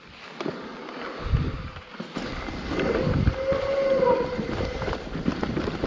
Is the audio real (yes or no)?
yes